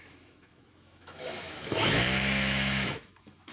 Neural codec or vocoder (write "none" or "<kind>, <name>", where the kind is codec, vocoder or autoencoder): autoencoder, DAC-VAE